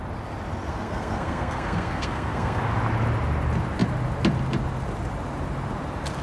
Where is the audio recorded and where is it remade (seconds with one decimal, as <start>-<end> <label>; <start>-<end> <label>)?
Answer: 0.0-0.7 recorded; 0.7-2.6 remade; 2.6-6.2 recorded